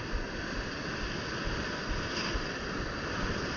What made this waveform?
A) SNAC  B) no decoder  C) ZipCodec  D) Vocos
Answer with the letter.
B